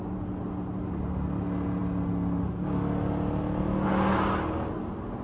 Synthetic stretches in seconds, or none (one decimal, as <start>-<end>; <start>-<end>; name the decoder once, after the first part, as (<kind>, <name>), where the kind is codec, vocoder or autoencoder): none